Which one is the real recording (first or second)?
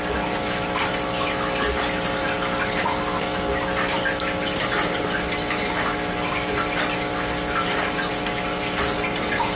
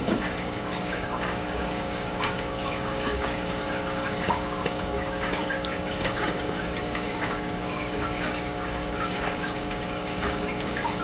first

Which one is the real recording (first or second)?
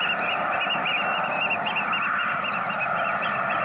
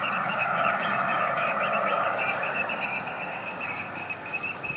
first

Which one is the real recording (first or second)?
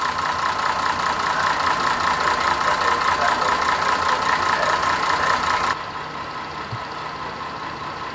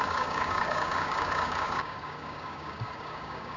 first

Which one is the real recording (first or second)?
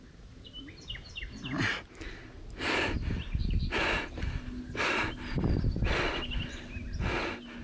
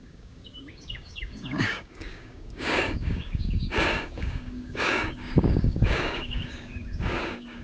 first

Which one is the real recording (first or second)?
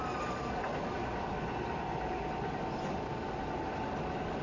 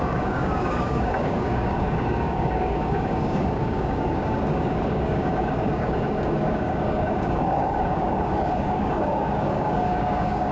first